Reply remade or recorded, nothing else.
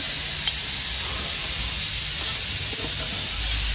recorded